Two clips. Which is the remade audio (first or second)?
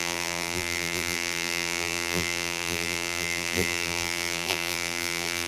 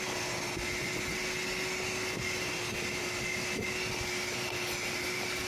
first